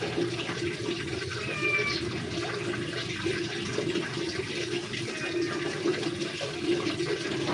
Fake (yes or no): no